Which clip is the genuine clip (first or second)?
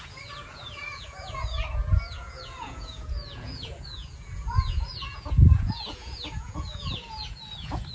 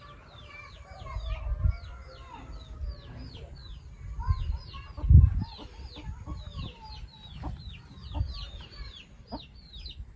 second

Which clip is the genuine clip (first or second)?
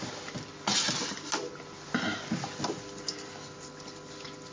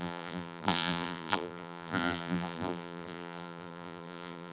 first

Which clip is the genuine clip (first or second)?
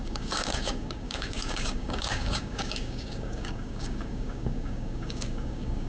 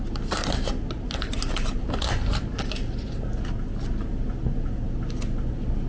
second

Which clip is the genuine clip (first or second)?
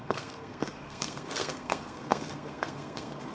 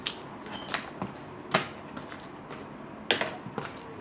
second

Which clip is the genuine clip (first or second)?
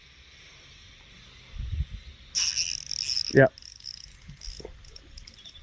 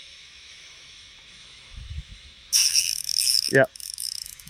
first